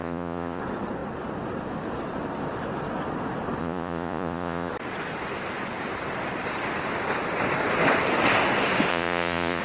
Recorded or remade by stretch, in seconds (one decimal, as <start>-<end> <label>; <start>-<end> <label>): 0.0-0.6 remade; 0.6-3.6 recorded; 3.6-4.7 remade; 4.7-8.9 recorded; 8.9-9.6 remade

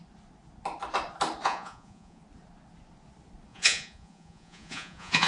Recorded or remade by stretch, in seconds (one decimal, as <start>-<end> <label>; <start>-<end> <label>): 0.0-1.4 recorded; 1.4-2.2 remade; 2.2-3.5 recorded; 3.5-5.3 remade

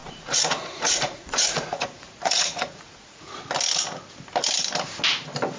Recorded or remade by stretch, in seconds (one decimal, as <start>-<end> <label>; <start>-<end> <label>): 0.0-3.4 remade; 3.4-5.6 recorded

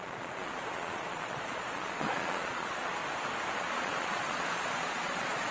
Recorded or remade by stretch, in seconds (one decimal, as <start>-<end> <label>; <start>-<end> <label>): 0.0-3.0 remade; 3.0-3.6 recorded; 3.6-5.5 remade

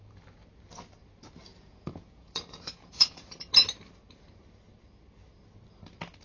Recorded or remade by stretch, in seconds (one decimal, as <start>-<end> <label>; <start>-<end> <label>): 0.0-1.5 recorded; 1.5-3.3 remade; 3.3-6.2 recorded

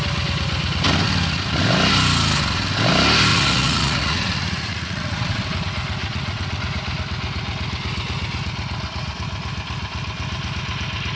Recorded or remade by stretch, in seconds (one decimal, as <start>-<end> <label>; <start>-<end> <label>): 0.0-3.3 recorded; 3.3-5.4 remade; 5.4-6.0 recorded; 6.0-6.6 remade; 6.6-11.2 recorded

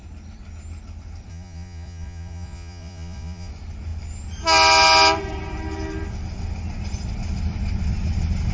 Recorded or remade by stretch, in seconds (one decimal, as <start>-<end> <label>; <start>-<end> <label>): 0.0-1.3 recorded; 1.3-3.5 remade; 3.5-8.5 recorded